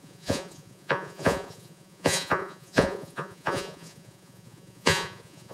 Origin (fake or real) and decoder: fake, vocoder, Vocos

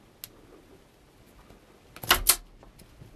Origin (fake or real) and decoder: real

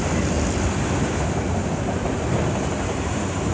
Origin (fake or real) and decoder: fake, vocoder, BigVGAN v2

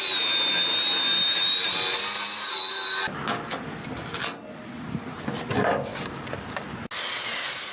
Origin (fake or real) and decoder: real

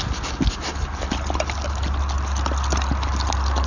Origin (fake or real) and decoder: real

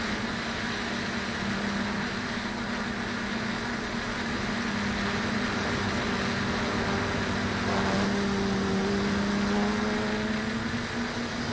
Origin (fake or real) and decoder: real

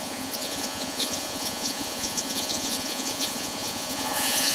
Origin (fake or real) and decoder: fake, vocoder, Vocos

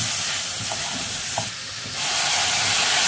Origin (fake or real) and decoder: real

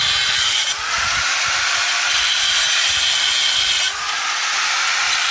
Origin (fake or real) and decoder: real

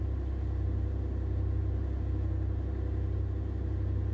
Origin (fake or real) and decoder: real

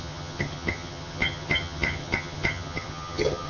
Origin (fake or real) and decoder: fake, vocoder, HiFi-GAN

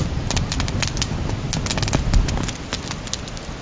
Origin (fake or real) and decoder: real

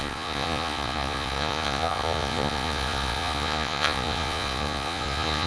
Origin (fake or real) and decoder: fake, vocoder, Vocos